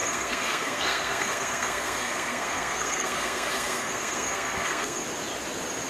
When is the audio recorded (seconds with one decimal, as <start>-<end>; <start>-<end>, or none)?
5.0-5.9